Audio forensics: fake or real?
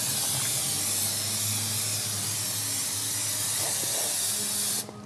real